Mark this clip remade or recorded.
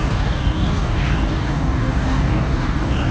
remade